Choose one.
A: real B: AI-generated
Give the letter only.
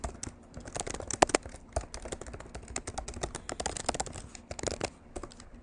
A